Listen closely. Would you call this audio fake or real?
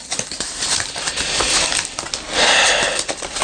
real